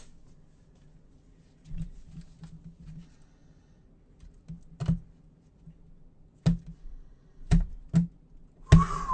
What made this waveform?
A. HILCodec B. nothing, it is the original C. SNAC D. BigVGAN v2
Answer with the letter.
B